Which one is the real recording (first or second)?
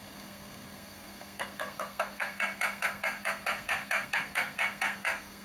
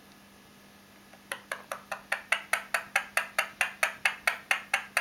second